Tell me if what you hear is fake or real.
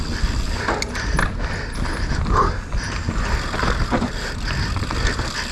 real